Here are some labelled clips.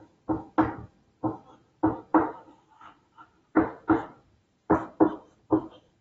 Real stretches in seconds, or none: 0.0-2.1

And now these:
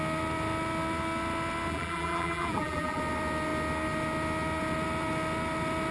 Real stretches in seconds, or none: 0.0-1.7; 3.0-5.9

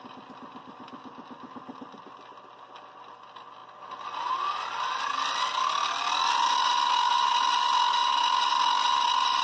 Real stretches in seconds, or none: 0.0-9.4

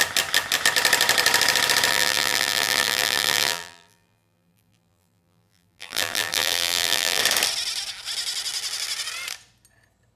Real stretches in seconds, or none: 0.0-1.9; 7.2-10.2

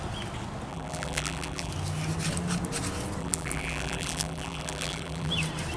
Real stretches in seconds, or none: 0.0-0.7; 1.7-3.2; 5.3-5.8